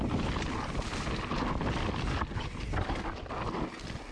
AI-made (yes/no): no